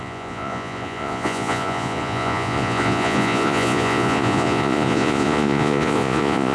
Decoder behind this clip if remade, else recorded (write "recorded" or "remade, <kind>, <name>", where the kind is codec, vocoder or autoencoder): remade, vocoder, Vocos